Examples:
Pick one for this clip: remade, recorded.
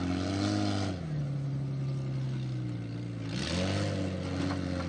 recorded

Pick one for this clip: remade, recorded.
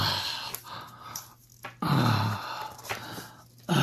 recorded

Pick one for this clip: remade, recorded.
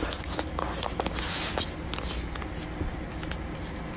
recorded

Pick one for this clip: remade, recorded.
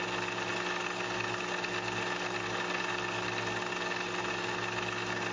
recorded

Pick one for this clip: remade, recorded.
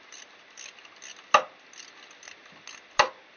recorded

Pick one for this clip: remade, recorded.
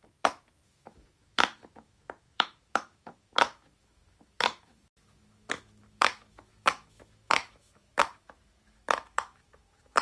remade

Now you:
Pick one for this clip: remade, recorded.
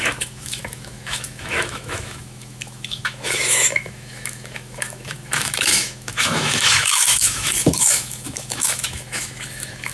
remade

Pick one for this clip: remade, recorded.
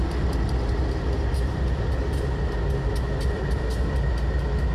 recorded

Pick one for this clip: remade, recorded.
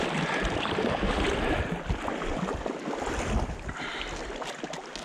recorded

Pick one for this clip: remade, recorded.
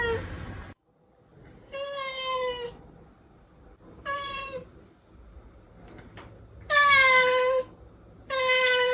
recorded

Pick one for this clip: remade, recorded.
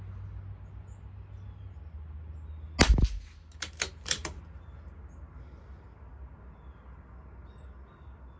recorded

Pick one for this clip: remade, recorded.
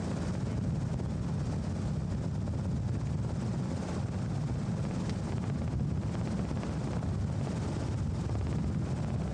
recorded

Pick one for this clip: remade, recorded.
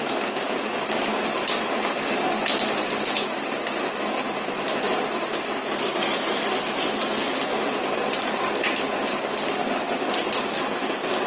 recorded